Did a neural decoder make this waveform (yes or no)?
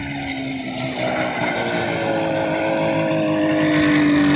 no